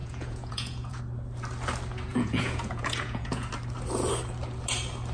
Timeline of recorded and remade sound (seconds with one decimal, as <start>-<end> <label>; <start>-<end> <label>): 0.0-1.0 remade; 1.0-2.1 recorded; 2.1-3.5 remade; 3.5-5.1 recorded